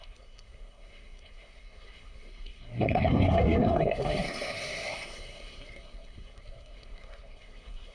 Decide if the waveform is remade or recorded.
remade